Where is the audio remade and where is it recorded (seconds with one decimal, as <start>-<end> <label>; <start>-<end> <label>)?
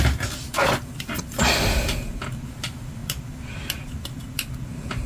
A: 0.0-5.1 recorded